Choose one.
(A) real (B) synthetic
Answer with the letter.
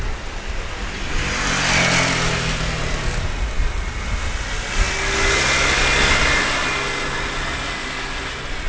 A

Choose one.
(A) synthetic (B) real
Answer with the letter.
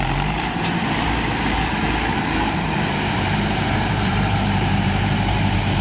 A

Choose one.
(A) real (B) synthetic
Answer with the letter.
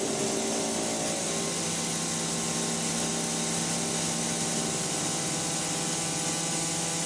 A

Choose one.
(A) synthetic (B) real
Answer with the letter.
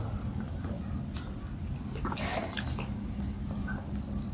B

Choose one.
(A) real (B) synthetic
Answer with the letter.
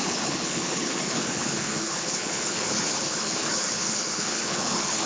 B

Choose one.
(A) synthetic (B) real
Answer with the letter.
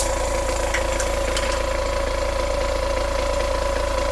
B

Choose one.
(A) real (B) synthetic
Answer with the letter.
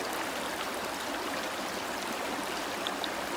A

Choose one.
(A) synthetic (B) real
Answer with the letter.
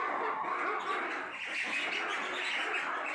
B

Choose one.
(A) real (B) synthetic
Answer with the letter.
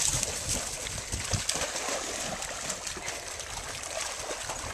A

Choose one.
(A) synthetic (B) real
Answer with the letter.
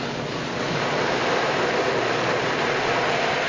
B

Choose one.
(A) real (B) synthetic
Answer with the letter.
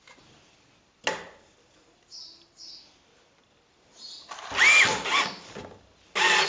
A